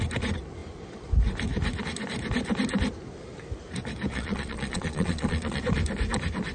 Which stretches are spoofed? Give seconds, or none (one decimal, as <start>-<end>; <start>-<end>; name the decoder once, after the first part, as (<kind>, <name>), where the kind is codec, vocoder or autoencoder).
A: 4.1-5.6 (vocoder, Vocos)